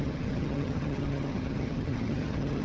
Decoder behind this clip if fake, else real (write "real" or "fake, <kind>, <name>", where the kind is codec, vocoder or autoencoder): fake, vocoder, HiFi-GAN